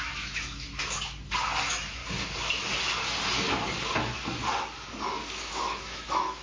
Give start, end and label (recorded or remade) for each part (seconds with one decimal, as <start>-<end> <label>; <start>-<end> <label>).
0.0-0.8 remade; 0.8-1.6 recorded; 1.6-2.0 remade; 2.0-5.5 recorded; 5.5-6.4 remade